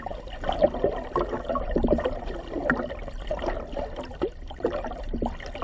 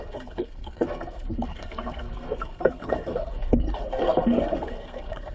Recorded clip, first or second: first